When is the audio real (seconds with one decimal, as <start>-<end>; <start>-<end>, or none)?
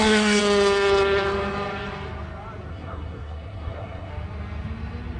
0.4-2.7; 4.1-5.2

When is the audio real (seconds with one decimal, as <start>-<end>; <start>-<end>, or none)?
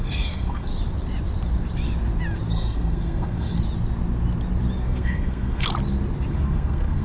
0.7-2.5; 3.6-4.8; 5.7-6.3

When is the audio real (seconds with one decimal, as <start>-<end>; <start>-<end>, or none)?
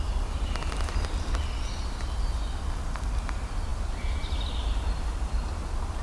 0.0-6.0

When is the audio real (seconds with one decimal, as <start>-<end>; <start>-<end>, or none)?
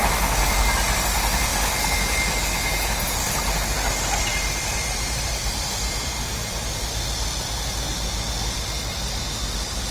0.0-9.9